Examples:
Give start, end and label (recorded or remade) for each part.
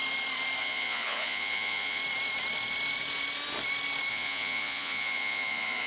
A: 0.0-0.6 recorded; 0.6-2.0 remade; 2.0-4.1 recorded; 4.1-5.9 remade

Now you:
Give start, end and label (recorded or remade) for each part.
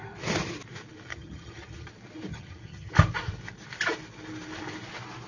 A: 0.0-1.1 recorded; 1.1-1.9 remade; 1.9-2.3 recorded; 2.3-2.9 remade; 2.9-5.3 recorded